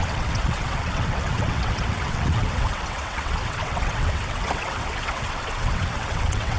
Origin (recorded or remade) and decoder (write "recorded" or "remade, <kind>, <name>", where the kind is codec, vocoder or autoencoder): remade, vocoder, WaveNeXt